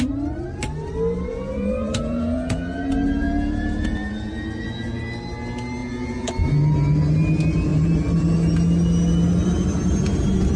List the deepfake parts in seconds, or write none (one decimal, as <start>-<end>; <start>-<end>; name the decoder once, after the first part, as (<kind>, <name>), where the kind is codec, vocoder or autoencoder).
1.3-5.0 (vocoder, Vocos); 5.8-6.3